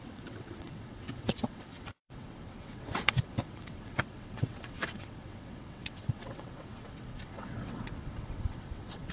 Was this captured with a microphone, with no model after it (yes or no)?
no